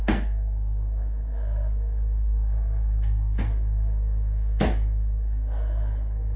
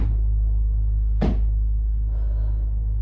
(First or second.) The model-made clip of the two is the first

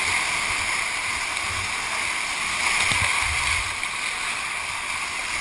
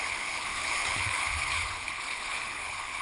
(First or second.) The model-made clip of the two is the second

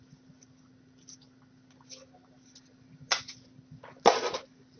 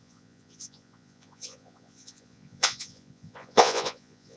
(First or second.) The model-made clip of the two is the second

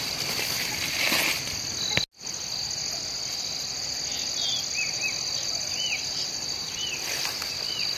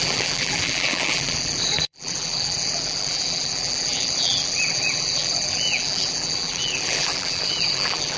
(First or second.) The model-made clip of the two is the second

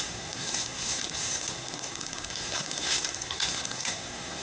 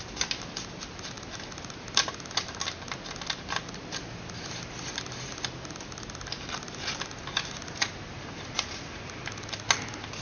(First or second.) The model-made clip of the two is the first